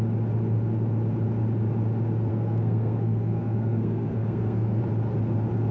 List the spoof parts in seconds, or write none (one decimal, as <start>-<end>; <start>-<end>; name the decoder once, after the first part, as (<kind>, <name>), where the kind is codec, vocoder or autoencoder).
2.3-4.8 (codec, SNAC)

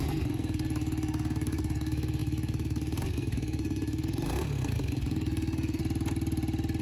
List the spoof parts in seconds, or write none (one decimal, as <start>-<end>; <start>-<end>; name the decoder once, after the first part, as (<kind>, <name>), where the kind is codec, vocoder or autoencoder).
0.0-5.8 (codec, SNAC)